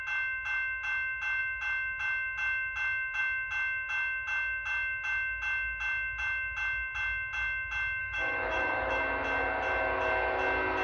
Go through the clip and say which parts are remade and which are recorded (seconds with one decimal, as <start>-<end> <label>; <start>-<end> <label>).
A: 0.0-8.0 recorded; 8.0-9.0 remade; 9.0-10.8 recorded